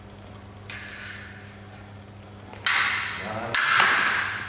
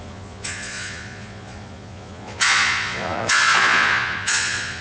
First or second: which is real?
first